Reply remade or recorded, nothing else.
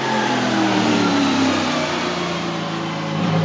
recorded